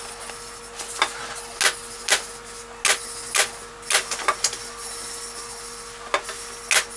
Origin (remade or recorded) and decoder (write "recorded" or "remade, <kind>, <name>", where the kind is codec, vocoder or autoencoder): recorded